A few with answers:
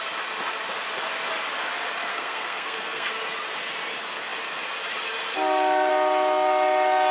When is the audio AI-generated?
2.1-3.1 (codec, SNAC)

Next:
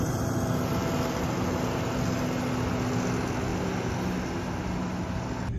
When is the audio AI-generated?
none

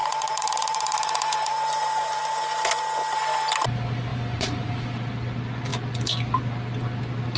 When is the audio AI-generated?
0.0-2.4 (vocoder, BigVGAN v2); 4.1-4.7

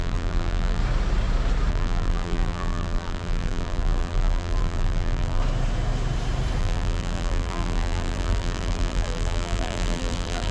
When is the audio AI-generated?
0.0-0.8 (vocoder, BigVGAN v2); 1.7-5.4; 6.6-10.5